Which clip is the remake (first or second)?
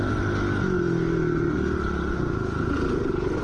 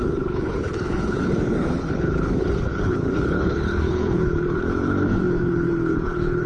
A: second